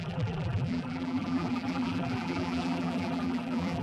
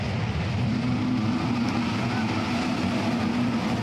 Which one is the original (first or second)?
second